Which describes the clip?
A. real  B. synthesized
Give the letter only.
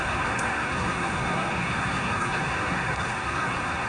B